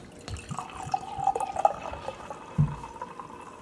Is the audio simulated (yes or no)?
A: no